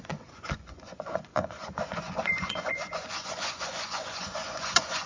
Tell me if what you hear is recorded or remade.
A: remade